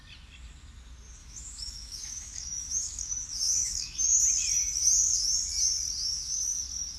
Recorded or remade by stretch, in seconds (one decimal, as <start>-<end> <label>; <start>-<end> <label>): 0.0-1.2 recorded; 1.2-4.2 remade; 4.2-7.0 recorded